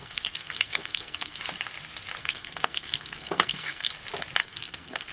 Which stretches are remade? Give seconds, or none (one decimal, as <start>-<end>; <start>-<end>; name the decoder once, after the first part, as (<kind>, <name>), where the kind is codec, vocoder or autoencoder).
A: 0.0-1.4 (codec, SNAC); 2.2-3.9; 4.4-5.1